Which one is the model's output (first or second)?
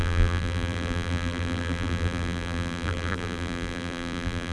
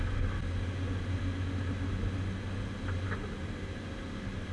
first